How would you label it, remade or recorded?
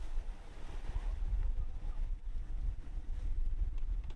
remade